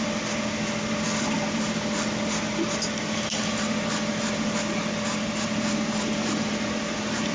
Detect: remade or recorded recorded